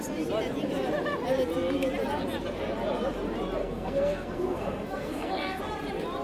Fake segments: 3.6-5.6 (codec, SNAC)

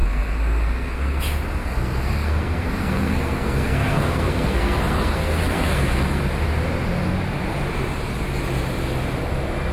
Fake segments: 0.0-1.2 (codec, SNAC); 1.6-6.2

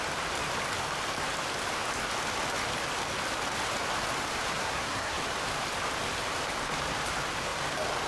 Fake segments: 4.5-5.2 (codec, SNAC)

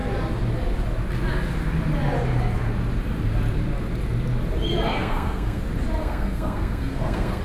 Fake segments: 5.0-5.6 (codec, SNAC); 6.0-7.4